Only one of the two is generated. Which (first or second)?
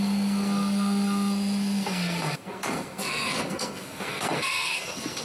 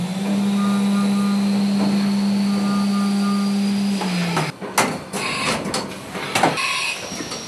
first